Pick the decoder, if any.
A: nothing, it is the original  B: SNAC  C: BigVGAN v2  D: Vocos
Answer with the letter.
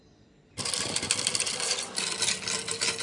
C